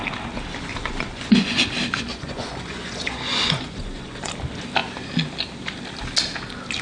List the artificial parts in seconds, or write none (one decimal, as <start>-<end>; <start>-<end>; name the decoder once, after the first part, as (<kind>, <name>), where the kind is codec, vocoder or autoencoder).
0.7-1.6 (vocoder, Vocos); 2.1-4.3